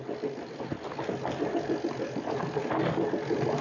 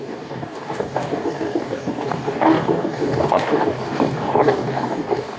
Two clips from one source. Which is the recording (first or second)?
first